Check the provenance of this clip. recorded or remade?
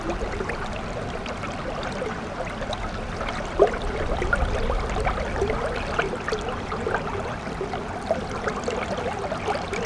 recorded